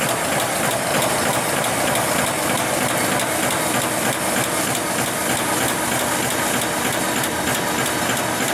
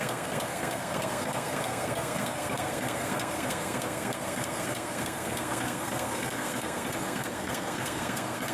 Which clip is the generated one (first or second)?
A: second